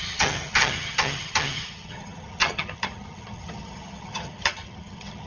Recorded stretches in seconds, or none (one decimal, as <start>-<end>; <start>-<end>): none